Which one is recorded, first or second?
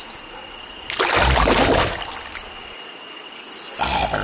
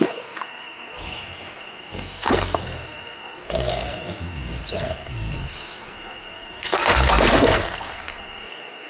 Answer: first